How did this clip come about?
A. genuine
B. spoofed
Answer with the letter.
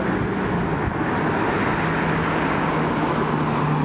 A